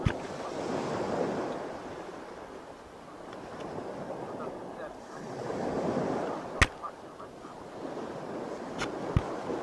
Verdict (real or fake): real